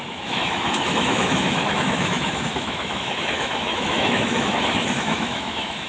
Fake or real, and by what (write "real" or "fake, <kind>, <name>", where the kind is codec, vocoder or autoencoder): fake, autoencoder, DAC-VAE